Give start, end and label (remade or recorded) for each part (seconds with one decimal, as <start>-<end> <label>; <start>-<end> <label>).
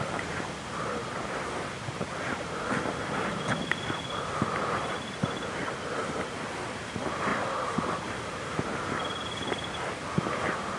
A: 0.0-10.8 recorded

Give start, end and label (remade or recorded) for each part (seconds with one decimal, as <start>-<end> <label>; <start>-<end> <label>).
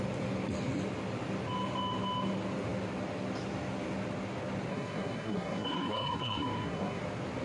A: 0.0-4.7 recorded; 4.7-7.0 remade; 7.0-7.4 recorded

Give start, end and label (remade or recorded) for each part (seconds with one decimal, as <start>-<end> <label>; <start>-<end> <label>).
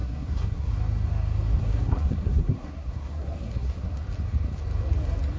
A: 0.0-0.7 remade; 0.7-1.6 recorded; 1.6-4.0 remade; 4.0-5.4 recorded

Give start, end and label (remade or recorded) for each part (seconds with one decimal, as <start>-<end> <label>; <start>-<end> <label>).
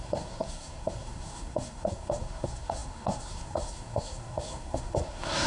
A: 0.0-5.5 remade